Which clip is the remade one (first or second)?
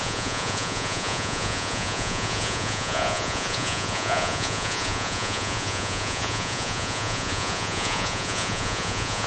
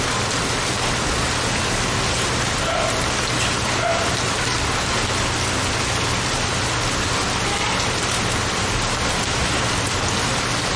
first